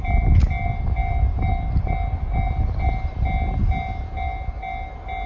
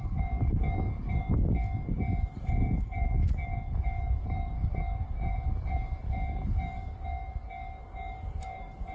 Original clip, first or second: first